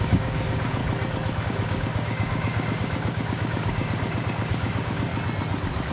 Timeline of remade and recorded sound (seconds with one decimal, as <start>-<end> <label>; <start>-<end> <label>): 0.0-0.8 remade; 0.8-1.4 recorded; 1.4-5.1 remade; 5.1-5.9 recorded